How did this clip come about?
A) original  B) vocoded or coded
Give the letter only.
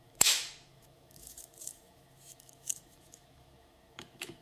B